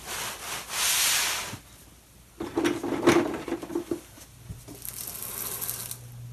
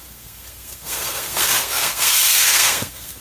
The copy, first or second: second